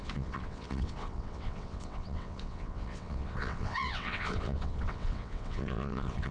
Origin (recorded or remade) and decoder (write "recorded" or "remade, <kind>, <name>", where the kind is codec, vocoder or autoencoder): remade, vocoder, WaveNeXt